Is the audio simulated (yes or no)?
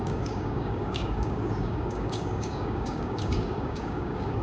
yes